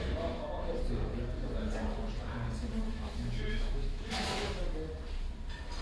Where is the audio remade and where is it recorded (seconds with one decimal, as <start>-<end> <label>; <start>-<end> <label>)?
0.0-2.9 recorded; 2.9-4.6 remade; 4.6-5.8 recorded